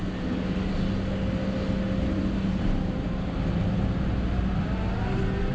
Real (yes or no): yes